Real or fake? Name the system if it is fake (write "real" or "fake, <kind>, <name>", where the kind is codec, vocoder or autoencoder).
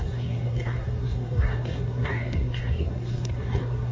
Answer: fake, codec, SNAC